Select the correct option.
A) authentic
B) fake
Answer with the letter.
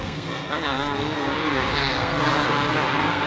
B